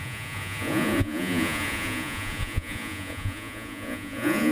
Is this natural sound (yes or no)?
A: no